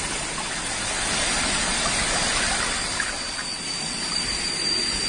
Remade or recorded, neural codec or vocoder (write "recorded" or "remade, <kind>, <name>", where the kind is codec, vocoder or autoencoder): recorded